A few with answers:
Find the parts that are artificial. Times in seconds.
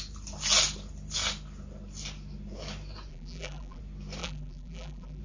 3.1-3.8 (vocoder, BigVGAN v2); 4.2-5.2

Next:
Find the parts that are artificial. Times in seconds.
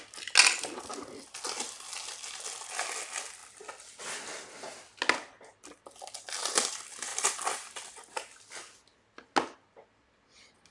3.4-5.0 (vocoder, BigVGAN v2); 7.1-8.5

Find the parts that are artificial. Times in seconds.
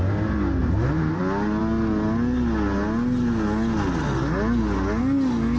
0.6-1.2 (vocoder, BigVGAN v2)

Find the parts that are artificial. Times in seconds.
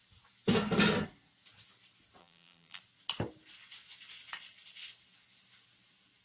2.2-2.8 (vocoder, BigVGAN v2)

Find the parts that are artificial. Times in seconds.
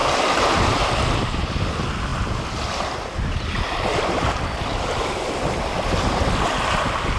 0.0-7.2 (vocoder, BigVGAN v2)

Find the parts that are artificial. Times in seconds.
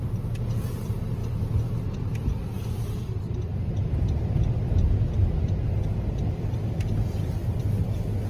none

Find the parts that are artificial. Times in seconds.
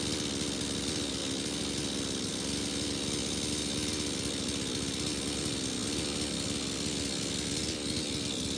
none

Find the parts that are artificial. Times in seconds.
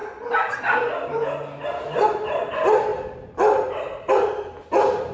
none